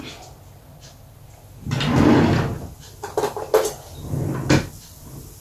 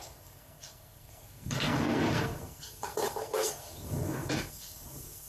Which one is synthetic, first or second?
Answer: second